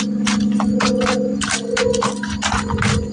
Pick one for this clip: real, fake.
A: real